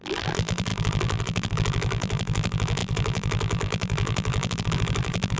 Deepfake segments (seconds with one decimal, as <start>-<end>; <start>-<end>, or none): 0.0-5.4